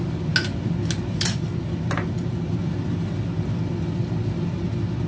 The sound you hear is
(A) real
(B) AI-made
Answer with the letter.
A